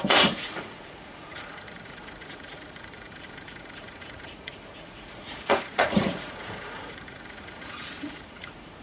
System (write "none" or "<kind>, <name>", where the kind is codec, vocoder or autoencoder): vocoder, Vocos